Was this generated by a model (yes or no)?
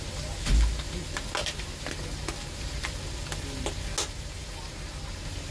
no